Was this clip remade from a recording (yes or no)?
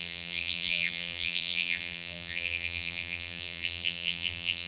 yes